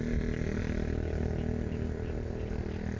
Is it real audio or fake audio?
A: real